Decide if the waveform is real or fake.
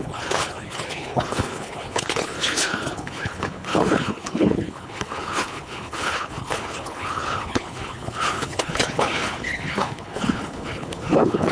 fake